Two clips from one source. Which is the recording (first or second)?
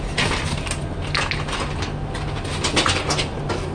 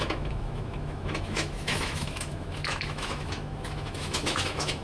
first